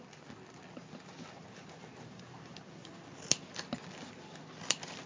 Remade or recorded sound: recorded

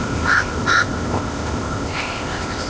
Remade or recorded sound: remade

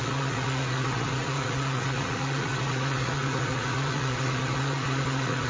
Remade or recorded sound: remade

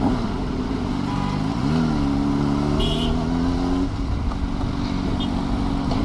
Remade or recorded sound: recorded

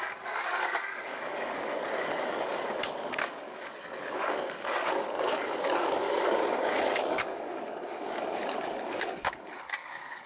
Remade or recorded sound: remade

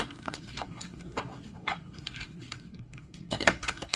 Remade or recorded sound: remade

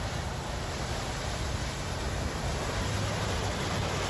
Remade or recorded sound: recorded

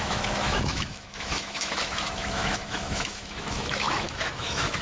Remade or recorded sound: remade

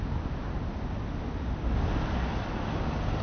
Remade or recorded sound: recorded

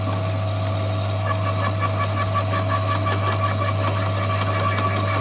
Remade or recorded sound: recorded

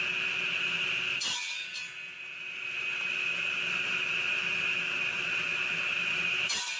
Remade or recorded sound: recorded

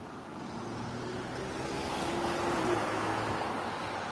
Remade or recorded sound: recorded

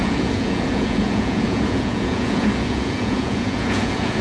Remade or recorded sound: remade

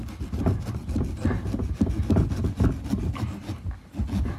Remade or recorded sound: recorded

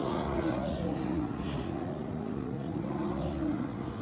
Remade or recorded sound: remade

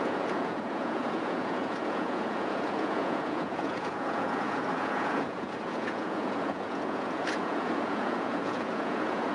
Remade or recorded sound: remade